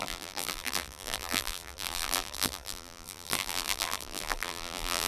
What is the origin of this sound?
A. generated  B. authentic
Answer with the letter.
A